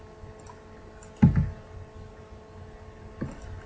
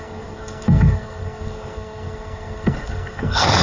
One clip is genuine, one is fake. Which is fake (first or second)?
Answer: second